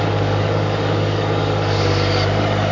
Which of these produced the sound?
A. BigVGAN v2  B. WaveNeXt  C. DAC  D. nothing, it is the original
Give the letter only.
C